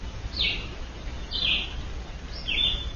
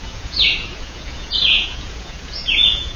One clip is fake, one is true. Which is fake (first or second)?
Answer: second